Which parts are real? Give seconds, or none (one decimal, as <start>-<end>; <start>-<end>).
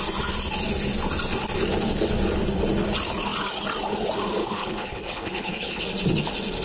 0.0-4.4; 5.8-6.6